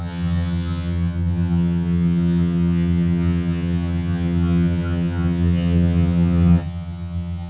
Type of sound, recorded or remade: remade